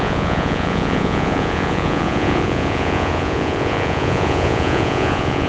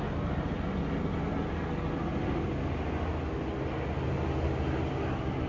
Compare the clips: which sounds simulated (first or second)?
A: first